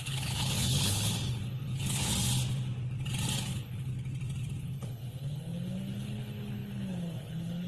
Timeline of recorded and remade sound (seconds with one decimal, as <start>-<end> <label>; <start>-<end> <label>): 0.0-2.1 remade; 2.1-3.4 recorded; 3.4-3.9 remade; 3.9-4.6 recorded; 4.6-7.7 remade